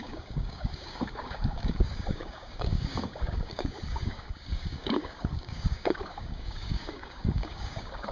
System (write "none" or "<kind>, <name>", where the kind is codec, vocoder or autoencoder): codec, DAC